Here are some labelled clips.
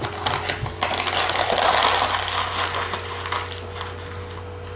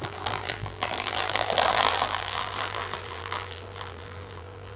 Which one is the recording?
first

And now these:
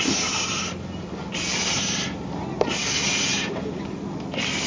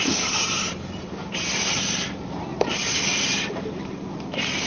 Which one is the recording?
first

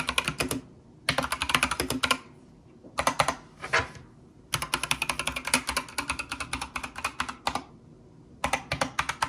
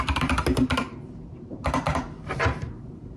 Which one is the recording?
first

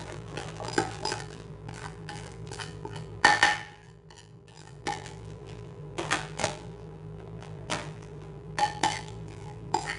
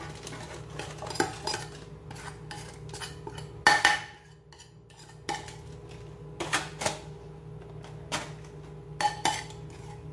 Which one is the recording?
second